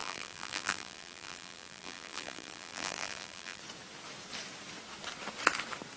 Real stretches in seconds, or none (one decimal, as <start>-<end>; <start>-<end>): 3.6-6.0